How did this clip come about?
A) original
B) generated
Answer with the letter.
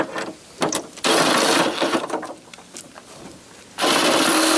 A